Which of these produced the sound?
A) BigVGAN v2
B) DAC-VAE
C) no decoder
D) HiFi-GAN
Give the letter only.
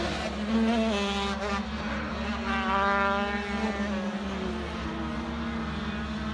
C